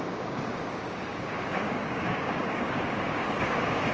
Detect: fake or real fake